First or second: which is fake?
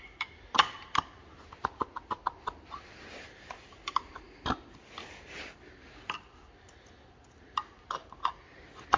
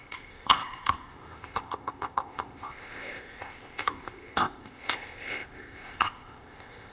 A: second